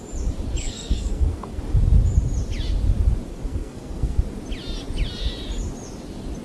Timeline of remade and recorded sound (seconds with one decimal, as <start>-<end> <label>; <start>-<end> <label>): 0.0-0.6 recorded; 0.6-1.6 remade; 1.6-3.3 recorded; 3.3-4.2 remade; 4.2-6.4 recorded